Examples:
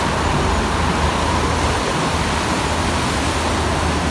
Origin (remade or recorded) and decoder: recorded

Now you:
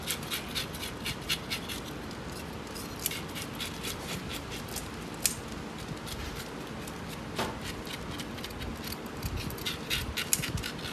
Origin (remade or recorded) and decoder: recorded